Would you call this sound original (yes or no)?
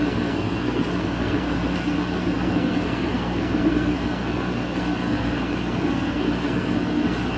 no